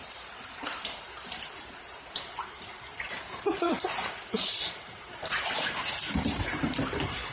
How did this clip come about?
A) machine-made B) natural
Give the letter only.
A